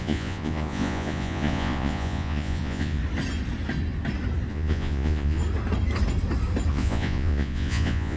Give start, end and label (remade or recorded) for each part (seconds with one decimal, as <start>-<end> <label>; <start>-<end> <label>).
0.0-3.0 remade; 3.0-4.5 recorded; 4.5-5.4 remade; 5.4-6.7 recorded; 6.7-8.2 remade